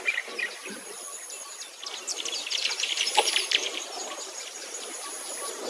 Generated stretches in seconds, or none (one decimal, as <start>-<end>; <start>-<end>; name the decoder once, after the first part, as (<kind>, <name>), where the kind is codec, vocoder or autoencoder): 2.1-5.7 (vocoder, BigVGAN v2)